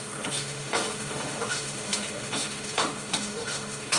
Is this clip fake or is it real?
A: fake